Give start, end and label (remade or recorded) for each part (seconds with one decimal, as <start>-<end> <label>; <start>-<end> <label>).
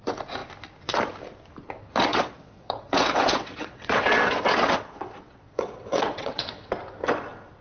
0.0-2.1 recorded; 2.1-6.7 remade; 6.7-7.6 recorded